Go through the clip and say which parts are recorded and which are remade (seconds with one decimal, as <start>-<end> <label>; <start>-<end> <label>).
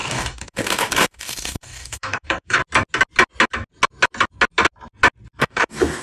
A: 0.0-2.6 remade; 2.6-5.4 recorded; 5.4-6.0 remade